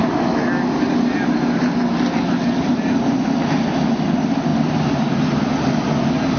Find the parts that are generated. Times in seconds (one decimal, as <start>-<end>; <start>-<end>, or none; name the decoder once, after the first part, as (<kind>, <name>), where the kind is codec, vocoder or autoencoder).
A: none